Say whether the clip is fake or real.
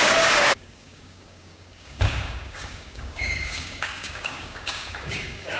fake